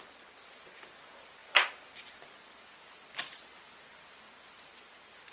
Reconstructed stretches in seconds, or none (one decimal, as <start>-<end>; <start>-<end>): none